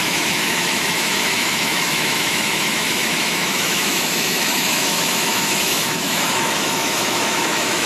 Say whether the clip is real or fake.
fake